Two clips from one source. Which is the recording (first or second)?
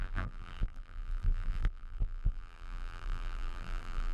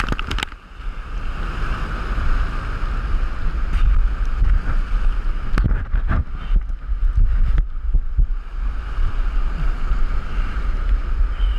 second